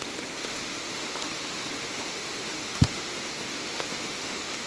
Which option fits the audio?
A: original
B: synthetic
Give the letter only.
B